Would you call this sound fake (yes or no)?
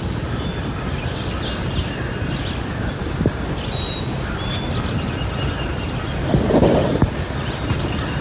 no